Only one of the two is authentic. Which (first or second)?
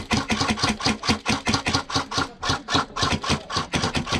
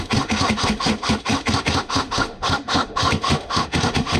first